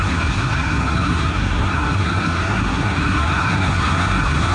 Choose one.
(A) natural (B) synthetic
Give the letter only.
B